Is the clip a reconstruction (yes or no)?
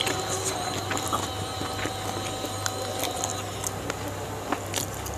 no